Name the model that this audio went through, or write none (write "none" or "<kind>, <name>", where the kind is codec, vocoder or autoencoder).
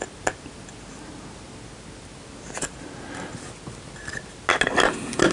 none